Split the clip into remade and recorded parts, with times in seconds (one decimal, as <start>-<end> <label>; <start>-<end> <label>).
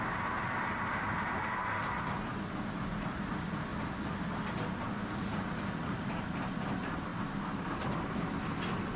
0.0-1.8 remade; 1.8-3.0 recorded; 3.0-3.7 remade; 3.7-4.8 recorded; 4.8-9.0 remade